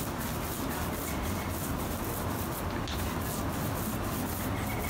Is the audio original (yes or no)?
yes